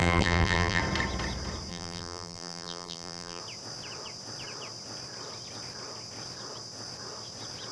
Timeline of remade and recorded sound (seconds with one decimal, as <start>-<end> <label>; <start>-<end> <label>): 0.0-0.8 remade; 0.8-1.7 recorded; 1.7-3.4 remade; 3.4-7.7 recorded